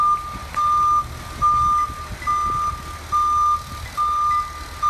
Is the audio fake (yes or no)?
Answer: no